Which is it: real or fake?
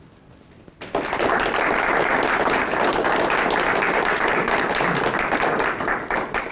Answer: real